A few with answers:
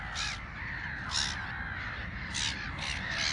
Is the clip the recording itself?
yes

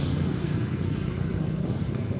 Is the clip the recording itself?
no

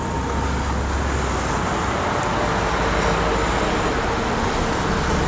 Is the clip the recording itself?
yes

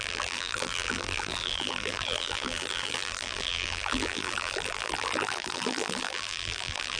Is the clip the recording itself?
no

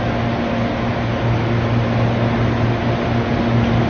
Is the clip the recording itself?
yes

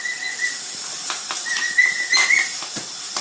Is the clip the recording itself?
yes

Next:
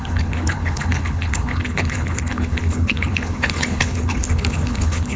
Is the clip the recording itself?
no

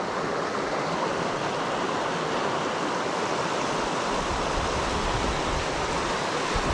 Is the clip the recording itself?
yes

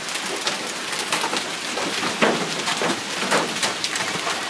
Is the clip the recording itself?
yes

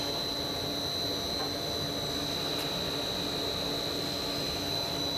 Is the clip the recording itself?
yes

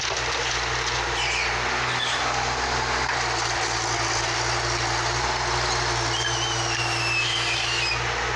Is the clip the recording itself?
yes